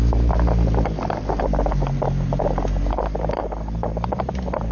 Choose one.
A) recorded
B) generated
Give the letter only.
A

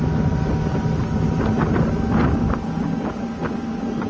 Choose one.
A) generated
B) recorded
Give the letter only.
B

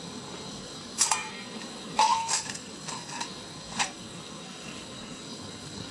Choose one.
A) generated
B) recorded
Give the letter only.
A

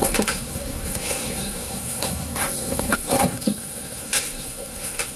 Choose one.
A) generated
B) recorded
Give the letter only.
A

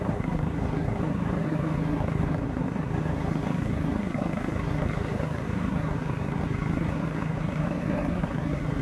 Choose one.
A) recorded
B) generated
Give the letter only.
B